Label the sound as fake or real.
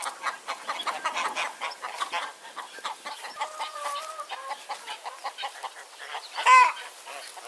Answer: real